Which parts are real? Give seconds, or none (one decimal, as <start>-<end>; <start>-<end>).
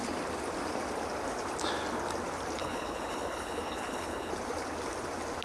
0.0-2.6; 4.3-5.4